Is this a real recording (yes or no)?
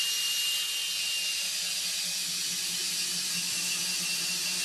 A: yes